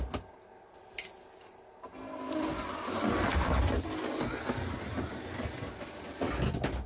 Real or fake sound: real